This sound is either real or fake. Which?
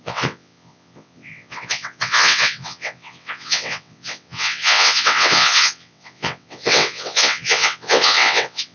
fake